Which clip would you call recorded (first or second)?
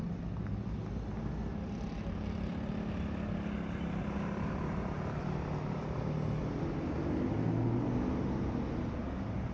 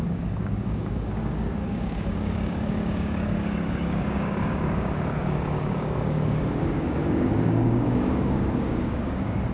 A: first